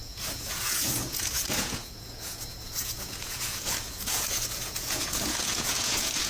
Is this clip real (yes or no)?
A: no